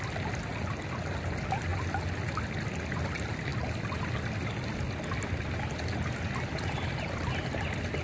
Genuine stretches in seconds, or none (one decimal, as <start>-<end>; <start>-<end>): 0.0-8.0